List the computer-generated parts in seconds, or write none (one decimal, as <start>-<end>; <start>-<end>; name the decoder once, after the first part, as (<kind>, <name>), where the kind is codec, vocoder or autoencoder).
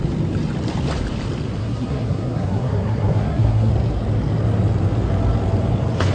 1.6-3.7 (codec, SNAC)